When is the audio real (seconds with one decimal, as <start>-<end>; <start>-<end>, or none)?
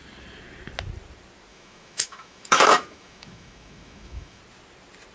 0.0-1.5; 4.4-5.1